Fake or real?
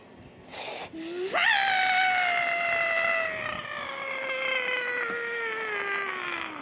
real